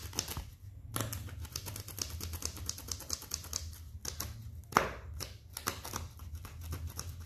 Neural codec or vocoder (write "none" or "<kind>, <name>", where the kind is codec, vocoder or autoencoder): none